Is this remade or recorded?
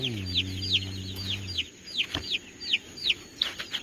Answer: recorded